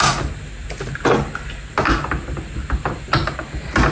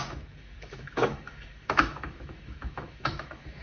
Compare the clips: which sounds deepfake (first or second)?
second